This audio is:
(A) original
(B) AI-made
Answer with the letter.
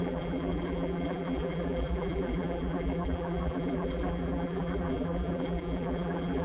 B